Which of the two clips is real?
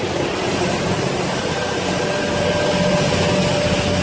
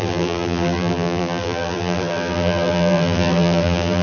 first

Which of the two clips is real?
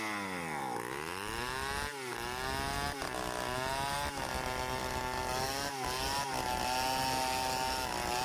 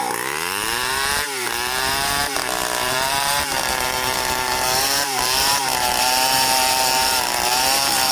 first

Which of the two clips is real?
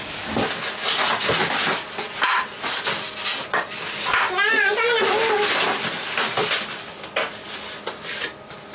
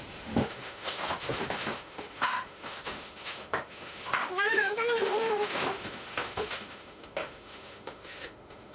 first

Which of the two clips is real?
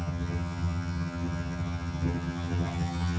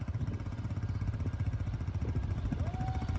second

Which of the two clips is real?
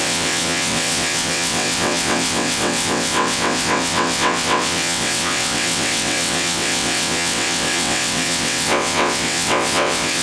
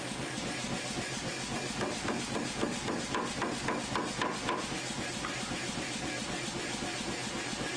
second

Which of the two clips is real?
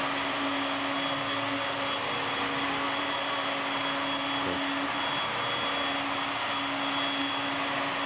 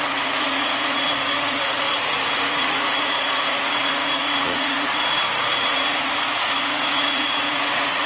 first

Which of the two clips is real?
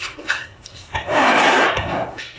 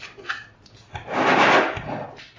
second